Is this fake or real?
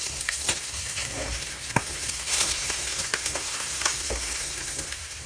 fake